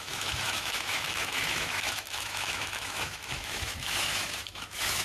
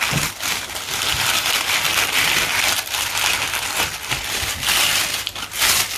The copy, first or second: first